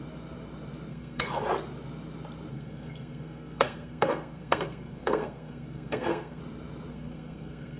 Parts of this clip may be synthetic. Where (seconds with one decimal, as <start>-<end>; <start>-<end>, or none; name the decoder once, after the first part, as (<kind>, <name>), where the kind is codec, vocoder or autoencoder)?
0.9-1.4 (codec, SNAC); 2.5-6.4; 6.9-7.8